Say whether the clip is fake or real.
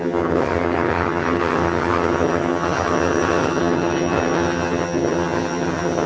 fake